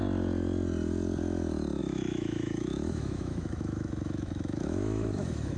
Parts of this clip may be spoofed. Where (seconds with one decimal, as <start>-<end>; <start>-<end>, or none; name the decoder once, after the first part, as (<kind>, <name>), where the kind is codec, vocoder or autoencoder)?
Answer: 1.8-5.6 (autoencoder, DAC-VAE)